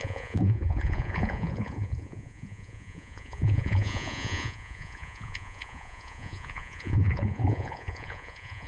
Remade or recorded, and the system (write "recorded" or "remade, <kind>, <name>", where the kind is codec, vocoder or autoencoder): remade, vocoder, Vocos